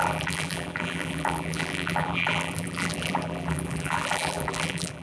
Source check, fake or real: fake